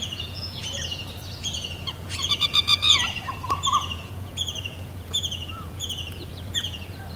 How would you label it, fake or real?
fake